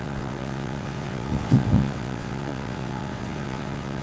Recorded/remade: remade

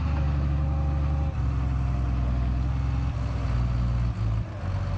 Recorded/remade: recorded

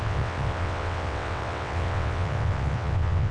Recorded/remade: remade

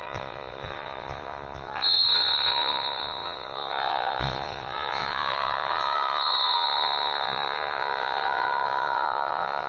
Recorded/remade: remade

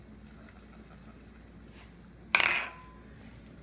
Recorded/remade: recorded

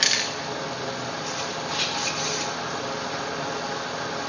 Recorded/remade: recorded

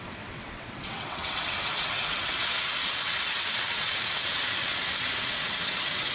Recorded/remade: remade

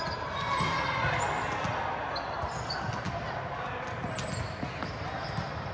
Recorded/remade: recorded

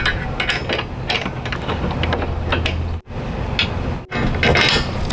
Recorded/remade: recorded